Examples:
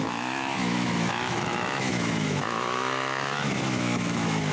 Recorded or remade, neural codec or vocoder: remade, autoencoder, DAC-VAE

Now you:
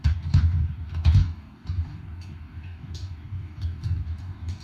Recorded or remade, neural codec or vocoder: remade, codec, DAC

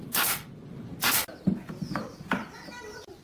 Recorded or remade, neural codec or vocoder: recorded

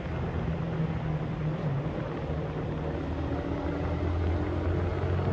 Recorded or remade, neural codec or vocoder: recorded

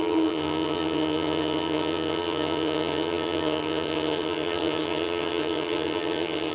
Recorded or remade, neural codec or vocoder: remade, vocoder, HiFi-GAN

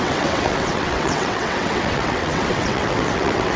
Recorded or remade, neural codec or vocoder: remade, vocoder, WaveNeXt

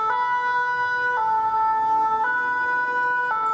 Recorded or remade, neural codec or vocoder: recorded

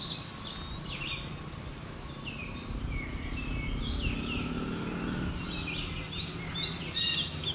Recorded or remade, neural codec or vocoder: recorded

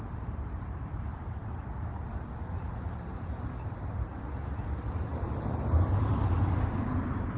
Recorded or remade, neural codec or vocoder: remade, vocoder, BigVGAN v2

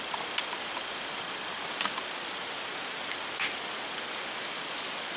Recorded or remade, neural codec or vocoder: recorded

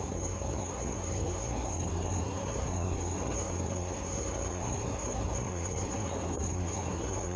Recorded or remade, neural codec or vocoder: remade, codec, SNAC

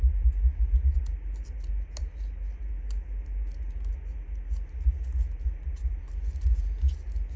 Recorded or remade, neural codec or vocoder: recorded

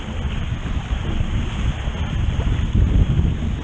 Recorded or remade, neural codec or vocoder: recorded